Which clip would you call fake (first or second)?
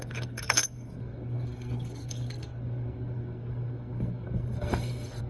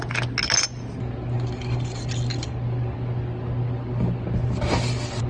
first